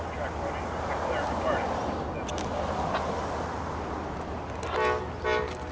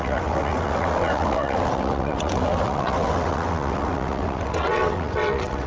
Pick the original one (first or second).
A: first